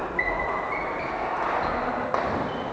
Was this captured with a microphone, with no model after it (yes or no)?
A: yes